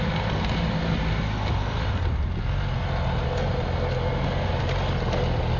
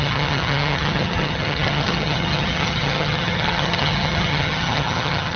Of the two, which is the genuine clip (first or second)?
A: first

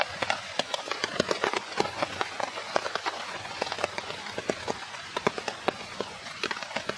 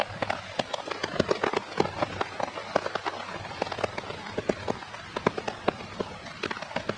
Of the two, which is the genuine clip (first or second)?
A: second